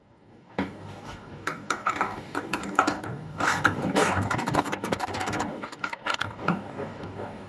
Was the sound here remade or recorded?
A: remade